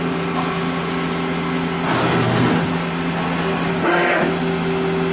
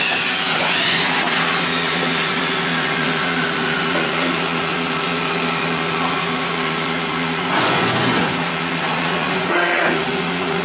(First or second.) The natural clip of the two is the first